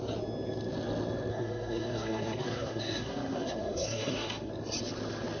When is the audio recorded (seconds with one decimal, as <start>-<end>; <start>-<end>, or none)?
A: 0.0-1.3; 4.5-5.4